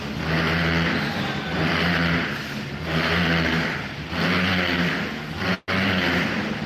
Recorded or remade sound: recorded